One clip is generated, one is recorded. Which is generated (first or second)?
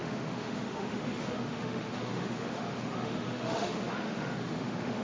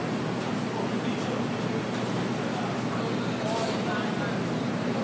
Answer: first